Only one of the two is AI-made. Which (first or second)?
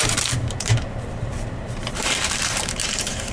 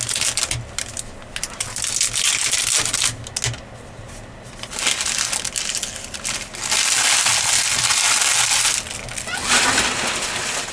first